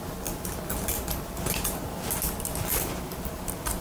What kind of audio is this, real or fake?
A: real